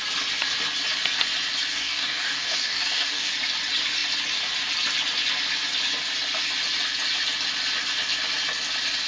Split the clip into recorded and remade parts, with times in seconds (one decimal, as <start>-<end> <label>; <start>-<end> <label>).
0.0-1.7 recorded; 1.7-3.3 remade; 3.3-9.1 recorded